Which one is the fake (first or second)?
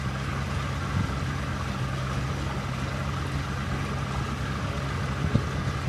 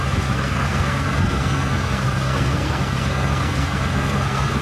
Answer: second